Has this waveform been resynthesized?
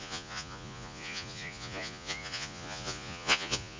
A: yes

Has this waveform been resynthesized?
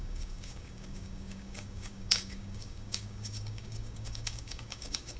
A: yes